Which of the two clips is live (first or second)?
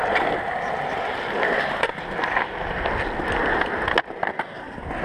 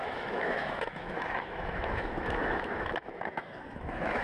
first